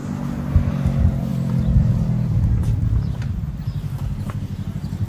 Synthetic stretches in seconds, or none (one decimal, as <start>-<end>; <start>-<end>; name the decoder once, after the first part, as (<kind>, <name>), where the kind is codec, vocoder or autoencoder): 0.7-5.1 (vocoder, BigVGAN v2)